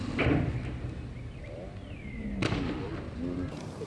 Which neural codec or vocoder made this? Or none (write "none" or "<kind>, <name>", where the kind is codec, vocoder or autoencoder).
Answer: none